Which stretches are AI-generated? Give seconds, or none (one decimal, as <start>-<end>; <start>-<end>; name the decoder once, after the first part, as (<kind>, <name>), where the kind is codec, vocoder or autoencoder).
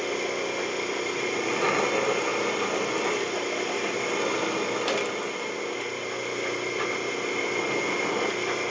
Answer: none